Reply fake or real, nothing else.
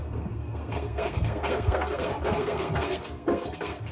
fake